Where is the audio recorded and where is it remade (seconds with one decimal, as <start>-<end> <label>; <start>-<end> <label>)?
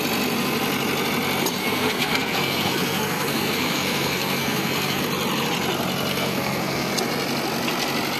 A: 0.0-1.6 recorded; 1.6-5.0 remade; 5.0-6.1 recorded; 6.1-6.9 remade; 6.9-8.2 recorded